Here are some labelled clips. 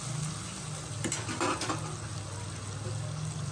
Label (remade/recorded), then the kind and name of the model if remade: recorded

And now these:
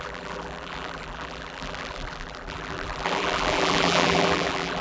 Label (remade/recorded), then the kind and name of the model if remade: remade, vocoder, BigVGAN v2